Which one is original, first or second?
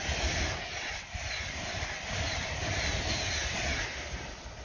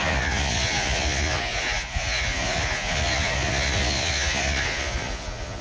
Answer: first